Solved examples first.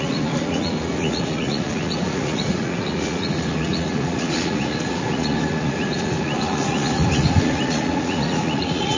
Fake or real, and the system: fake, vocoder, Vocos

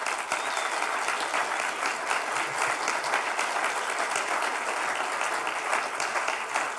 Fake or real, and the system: real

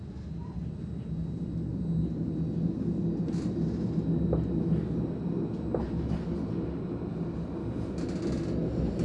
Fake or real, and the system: real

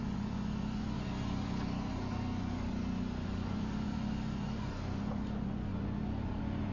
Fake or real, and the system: fake, vocoder, Vocos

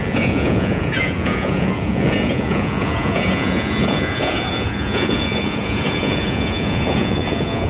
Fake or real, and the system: fake, vocoder, Vocos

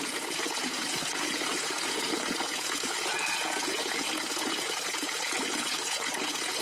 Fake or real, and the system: fake, vocoder, Vocos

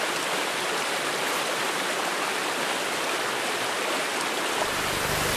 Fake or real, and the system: real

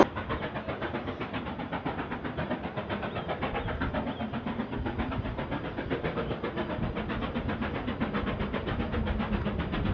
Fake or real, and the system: real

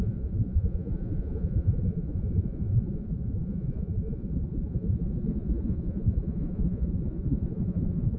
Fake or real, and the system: fake, vocoder, Vocos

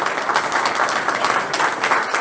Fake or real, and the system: real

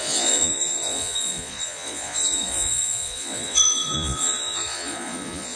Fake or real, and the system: fake, vocoder, Vocos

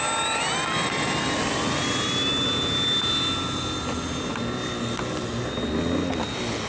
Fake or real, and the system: real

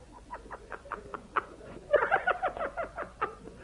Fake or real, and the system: fake, vocoder, Vocos